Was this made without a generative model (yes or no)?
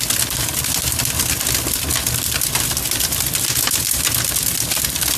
yes